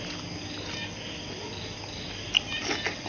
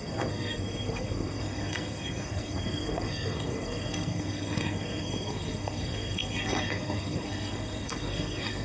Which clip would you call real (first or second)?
first